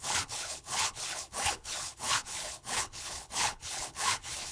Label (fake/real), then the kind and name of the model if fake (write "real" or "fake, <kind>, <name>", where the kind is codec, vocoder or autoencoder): fake, codec, HILCodec